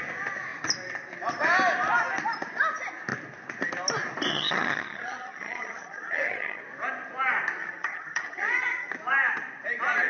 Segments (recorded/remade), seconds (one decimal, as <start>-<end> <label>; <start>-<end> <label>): 0.0-4.3 recorded; 4.3-6.6 remade; 6.6-7.6 recorded; 7.6-8.9 remade; 8.9-10.1 recorded